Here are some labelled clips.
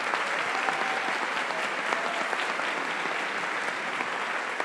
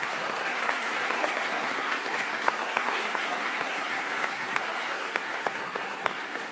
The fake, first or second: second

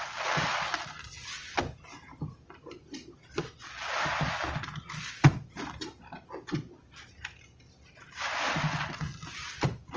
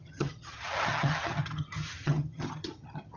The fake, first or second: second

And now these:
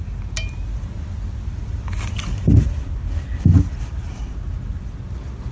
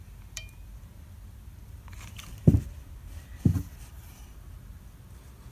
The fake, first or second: second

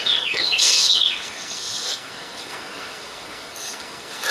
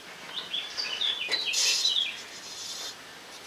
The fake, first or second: first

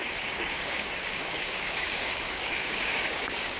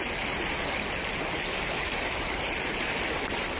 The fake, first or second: first